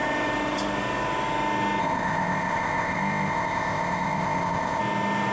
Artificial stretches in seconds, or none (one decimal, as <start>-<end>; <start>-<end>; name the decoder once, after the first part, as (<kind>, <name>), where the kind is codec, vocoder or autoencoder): 1.8-4.8 (codec, ZipCodec)